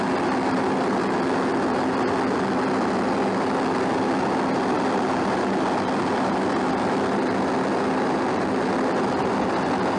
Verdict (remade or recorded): recorded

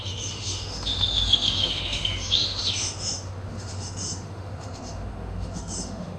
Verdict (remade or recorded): remade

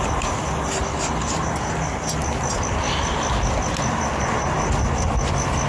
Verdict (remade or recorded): recorded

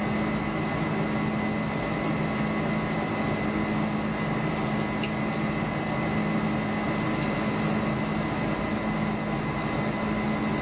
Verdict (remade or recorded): recorded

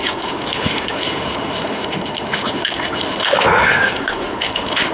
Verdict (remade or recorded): remade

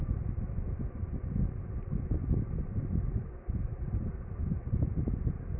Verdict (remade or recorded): recorded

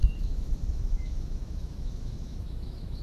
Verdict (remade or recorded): remade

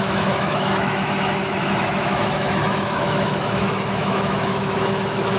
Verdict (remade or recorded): remade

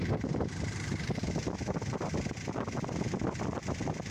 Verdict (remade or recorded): recorded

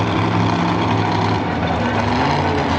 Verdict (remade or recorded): recorded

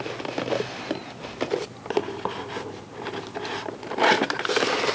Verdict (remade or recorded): recorded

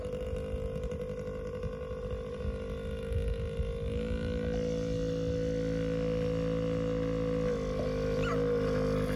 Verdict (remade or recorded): recorded